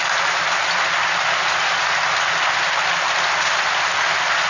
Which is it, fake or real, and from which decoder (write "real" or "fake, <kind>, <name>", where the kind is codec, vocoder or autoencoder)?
real